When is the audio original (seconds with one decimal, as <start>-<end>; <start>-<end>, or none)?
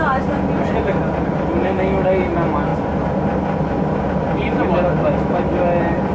0.0-1.6; 2.2-4.9; 5.5-6.1